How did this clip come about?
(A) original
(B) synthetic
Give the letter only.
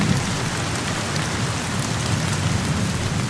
A